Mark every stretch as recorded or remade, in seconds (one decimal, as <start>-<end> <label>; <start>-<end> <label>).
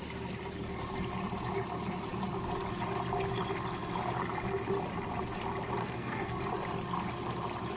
0.0-5.8 recorded; 5.8-6.4 remade; 6.4-7.8 recorded